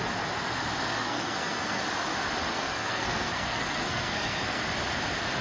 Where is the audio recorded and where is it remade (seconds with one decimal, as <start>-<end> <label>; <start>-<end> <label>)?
0.0-0.9 recorded; 0.9-1.8 remade; 1.8-2.5 recorded; 2.5-4.6 remade; 4.6-5.4 recorded